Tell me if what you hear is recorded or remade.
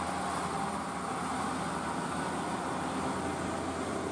recorded